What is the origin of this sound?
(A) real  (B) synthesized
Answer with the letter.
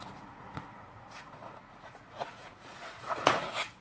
B